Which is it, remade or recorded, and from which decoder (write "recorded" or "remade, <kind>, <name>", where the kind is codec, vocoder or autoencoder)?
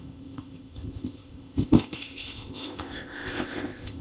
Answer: remade, codec, ZipCodec